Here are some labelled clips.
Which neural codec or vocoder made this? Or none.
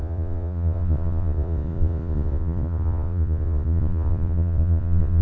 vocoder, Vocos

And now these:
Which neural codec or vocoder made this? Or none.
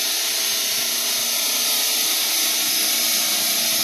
none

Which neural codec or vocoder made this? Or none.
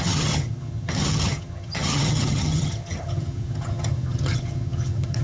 vocoder, HiFi-GAN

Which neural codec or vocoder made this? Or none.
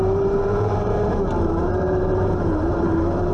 vocoder, BigVGAN v2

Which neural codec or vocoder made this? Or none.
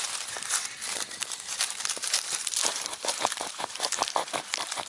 vocoder, BigVGAN v2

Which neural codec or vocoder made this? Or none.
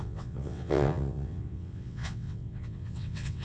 vocoder, WaveNeXt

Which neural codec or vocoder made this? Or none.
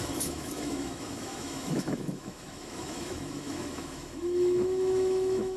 autoencoder, DAC-VAE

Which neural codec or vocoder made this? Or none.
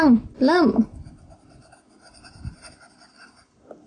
none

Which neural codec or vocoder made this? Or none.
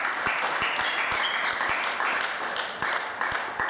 none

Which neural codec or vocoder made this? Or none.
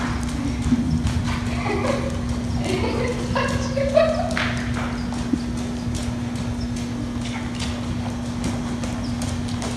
none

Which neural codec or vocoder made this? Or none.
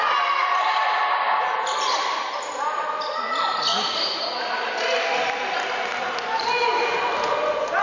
none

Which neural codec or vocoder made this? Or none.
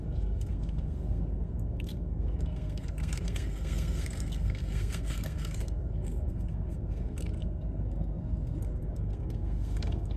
codec, SNAC